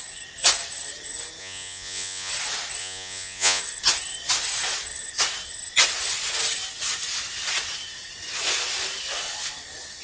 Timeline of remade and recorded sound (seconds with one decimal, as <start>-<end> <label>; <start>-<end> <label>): 0.0-1.4 recorded; 1.4-2.3 remade; 2.3-2.8 recorded; 2.8-3.6 remade; 3.6-10.0 recorded